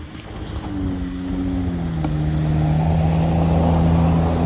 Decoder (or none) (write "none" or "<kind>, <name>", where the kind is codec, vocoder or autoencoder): none